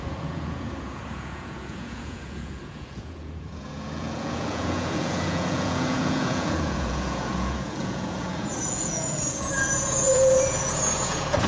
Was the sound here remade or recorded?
remade